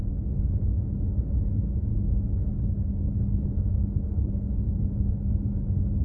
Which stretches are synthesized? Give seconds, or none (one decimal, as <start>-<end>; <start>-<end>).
0.0-0.8; 1.9-5.5